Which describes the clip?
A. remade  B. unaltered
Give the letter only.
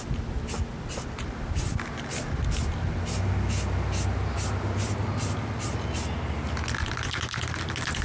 B